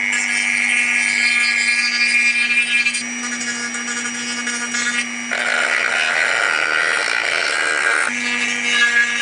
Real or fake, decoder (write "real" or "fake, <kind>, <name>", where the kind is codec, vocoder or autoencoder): real